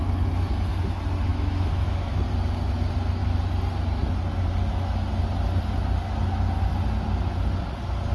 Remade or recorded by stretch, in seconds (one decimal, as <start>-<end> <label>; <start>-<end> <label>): 0.0-1.3 recorded; 1.3-2.2 remade; 2.2-8.1 recorded